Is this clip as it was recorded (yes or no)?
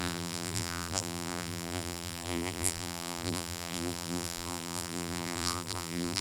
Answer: no